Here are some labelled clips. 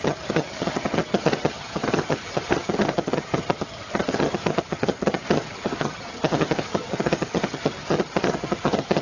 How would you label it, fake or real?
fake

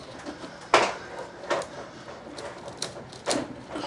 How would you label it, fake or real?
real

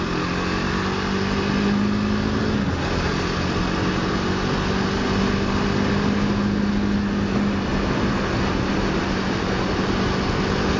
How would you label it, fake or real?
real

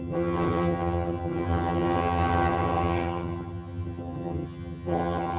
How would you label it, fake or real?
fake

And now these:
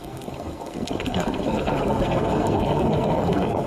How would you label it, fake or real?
fake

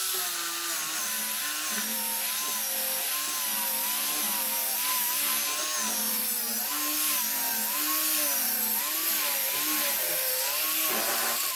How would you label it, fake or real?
real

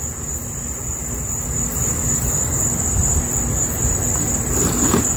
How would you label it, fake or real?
real